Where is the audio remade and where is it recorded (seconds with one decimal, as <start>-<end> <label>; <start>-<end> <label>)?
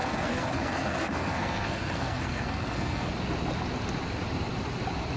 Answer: 0.0-3.1 remade; 3.1-5.2 recorded